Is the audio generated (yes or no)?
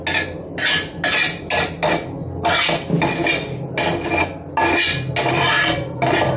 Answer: no